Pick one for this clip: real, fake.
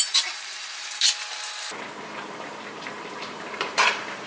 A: fake